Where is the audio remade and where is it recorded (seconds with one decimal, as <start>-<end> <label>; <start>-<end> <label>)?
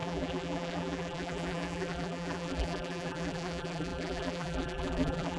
0.0-5.4 remade